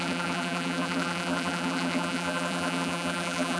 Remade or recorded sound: remade